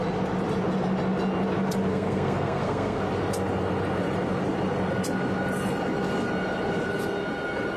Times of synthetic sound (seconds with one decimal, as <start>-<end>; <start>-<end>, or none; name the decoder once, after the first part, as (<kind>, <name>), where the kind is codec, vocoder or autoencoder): 1.9-3.0 (codec, SNAC)